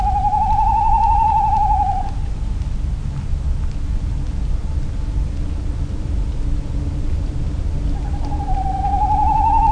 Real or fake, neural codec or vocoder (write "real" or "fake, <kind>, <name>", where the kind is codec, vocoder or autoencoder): real